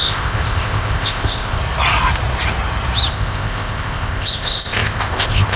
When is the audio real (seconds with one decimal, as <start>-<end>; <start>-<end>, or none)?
1.6-3.1